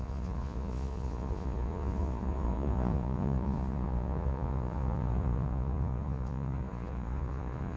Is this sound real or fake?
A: fake